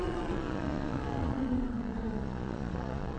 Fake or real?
fake